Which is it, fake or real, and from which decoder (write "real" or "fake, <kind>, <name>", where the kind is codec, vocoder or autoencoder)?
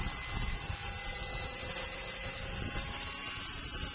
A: real